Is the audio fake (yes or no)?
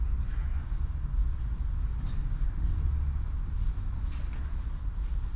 no